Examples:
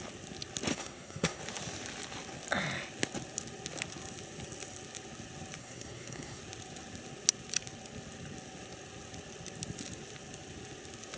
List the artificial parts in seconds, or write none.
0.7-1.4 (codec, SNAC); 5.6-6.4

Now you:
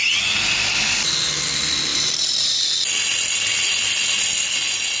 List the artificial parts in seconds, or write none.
1.9-2.6 (vocoder, BigVGAN v2)

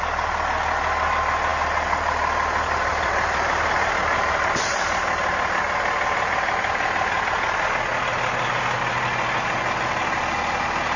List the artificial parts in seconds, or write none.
none

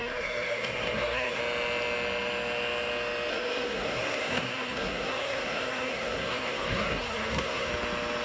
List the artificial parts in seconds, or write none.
0.0-1.4 (codec, SNAC); 3.3-7.7

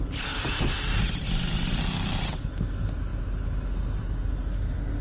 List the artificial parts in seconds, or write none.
none